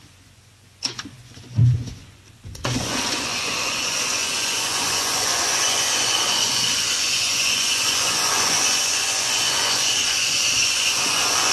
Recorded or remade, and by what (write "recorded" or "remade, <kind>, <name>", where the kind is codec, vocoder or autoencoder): remade, vocoder, Vocos